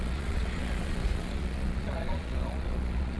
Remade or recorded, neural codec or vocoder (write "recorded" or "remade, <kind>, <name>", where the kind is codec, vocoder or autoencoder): remade, vocoder, Vocos